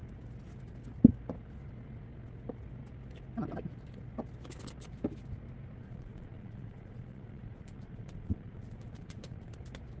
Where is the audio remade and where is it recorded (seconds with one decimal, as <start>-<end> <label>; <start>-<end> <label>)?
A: 0.0-5.8 recorded; 5.8-9.5 remade; 9.5-10.0 recorded